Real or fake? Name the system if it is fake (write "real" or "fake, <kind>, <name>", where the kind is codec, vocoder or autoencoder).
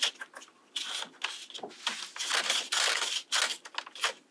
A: real